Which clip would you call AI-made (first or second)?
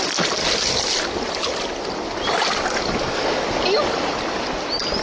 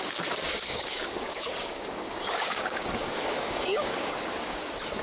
second